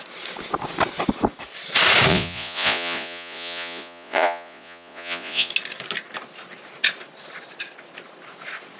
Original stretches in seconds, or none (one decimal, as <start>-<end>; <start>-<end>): 0.0-2.1; 5.5-8.8